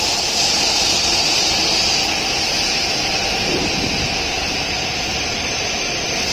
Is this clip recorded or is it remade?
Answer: recorded